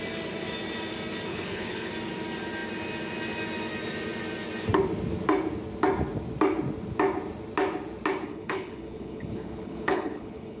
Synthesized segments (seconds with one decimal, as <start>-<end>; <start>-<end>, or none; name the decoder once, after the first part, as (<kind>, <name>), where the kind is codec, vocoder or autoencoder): 1.3-1.9 (codec, HILCodec); 8.3-10.6